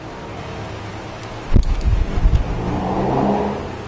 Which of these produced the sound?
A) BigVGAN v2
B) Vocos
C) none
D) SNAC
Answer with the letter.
C